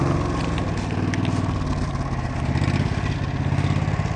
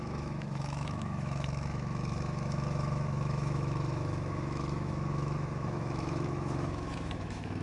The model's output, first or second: second